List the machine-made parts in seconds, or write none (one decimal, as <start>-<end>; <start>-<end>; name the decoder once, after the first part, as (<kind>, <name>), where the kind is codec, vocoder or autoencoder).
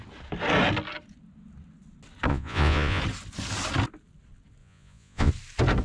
2.3-3.0 (vocoder, Vocos); 4.6-5.3